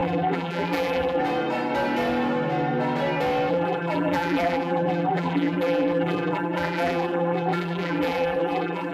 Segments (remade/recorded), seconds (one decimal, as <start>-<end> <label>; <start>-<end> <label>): 0.0-1.2 remade; 1.2-3.5 recorded; 3.5-8.9 remade